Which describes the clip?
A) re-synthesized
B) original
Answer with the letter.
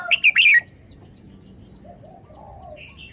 B